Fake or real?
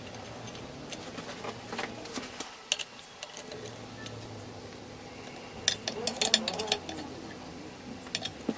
real